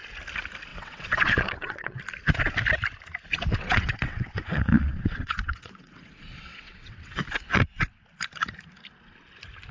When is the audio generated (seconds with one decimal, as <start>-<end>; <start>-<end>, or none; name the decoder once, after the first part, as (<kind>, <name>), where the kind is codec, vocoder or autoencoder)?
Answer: 0.7-2.0 (vocoder, WaveNeXt); 3.5-7.2